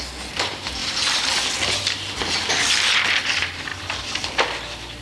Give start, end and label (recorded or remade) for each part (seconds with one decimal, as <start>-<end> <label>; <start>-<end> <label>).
0.0-5.0 recorded